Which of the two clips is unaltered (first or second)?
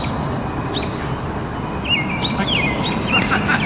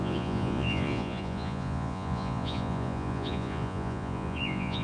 first